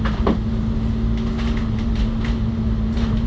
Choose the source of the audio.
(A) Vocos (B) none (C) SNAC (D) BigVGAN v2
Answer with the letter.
B